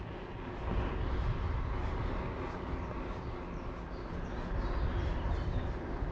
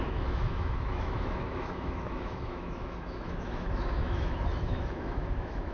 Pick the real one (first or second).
first